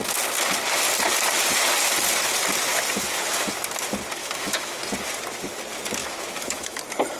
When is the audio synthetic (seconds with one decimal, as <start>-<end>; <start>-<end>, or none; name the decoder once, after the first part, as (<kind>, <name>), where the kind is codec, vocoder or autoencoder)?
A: 4.2-4.8 (autoencoder, DAC-VAE); 6.0-6.8